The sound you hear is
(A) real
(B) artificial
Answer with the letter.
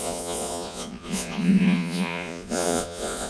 B